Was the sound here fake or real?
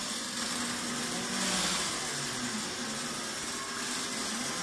real